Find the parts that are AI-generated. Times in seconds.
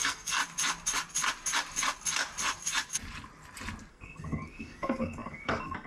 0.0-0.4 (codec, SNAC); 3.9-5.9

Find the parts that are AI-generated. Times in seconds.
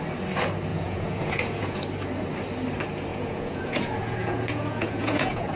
0.7-1.8 (vocoder, Vocos); 3.1-5.6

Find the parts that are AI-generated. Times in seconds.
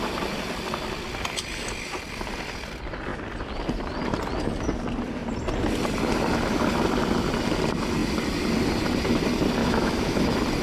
9.6-10.2 (autoencoder, DAC-VAE)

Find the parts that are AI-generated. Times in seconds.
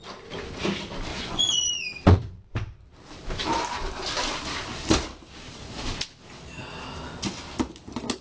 1.1-1.7 (vocoder, Vocos)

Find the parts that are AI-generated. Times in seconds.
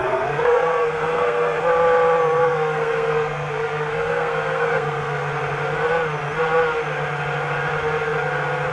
0.0-1.6 (codec, SNAC); 2.4-5.3